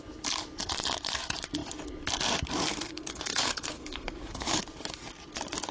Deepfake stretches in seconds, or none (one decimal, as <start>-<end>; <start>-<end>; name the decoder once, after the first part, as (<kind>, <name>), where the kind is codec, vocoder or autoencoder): 2.7-4.5 (codec, SNAC)